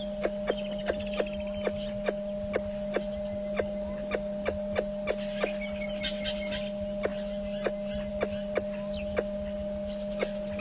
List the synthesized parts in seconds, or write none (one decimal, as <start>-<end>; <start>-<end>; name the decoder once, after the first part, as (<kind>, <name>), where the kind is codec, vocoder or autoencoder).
none

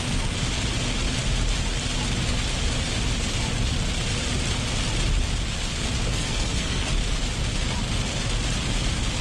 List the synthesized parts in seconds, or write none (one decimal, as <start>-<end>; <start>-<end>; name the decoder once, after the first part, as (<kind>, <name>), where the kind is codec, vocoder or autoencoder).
6.1-6.9 (codec, SNAC)

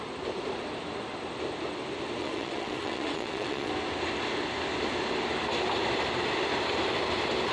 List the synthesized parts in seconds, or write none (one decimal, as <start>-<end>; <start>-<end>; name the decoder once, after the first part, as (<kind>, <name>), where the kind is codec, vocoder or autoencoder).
2.2-3.7 (vocoder, Vocos)

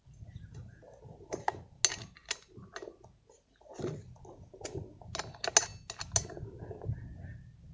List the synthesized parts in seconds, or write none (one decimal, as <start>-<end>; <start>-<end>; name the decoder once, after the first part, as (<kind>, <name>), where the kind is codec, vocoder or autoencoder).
none

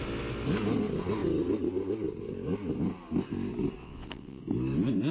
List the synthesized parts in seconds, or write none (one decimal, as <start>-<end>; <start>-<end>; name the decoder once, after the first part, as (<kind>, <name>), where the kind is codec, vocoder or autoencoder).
3.8-4.4 (vocoder, WaveNeXt)